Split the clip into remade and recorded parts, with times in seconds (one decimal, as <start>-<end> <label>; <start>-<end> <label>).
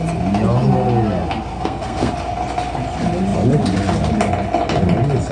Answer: 0.0-1.5 recorded; 1.5-2.1 remade; 2.1-5.3 recorded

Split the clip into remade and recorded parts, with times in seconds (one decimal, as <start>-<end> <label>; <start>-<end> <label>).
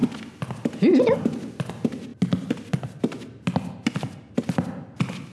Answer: 0.0-5.3 recorded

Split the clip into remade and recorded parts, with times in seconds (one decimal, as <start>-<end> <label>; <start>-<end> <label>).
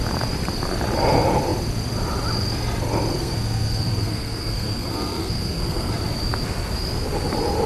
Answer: 0.0-3.2 recorded; 3.2-5.9 remade; 5.9-7.7 recorded